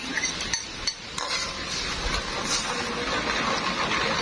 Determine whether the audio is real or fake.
real